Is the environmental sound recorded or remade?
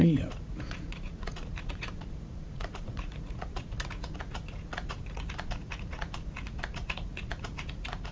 remade